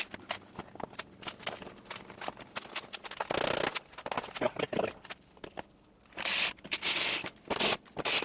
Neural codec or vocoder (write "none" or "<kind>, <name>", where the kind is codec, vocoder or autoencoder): none